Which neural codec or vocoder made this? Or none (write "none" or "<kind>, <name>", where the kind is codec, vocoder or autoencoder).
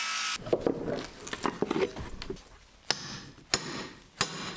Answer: none